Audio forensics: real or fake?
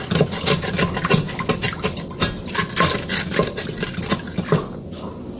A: real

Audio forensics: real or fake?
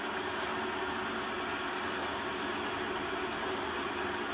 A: real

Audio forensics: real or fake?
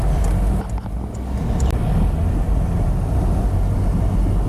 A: real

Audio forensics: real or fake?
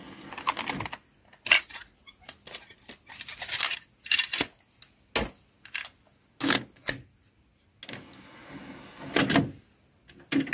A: real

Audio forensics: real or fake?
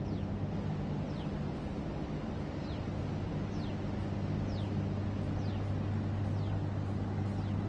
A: real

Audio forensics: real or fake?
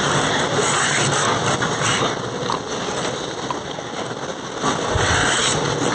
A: real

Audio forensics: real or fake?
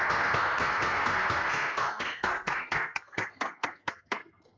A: fake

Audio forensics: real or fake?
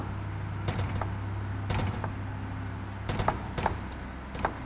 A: real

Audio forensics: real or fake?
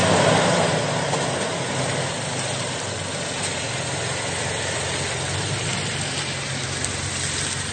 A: real